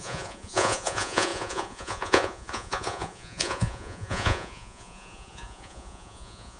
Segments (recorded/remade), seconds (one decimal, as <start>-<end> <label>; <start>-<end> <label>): 0.0-6.6 remade